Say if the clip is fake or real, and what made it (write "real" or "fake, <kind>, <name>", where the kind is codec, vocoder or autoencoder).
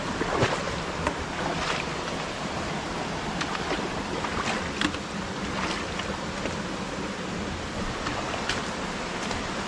real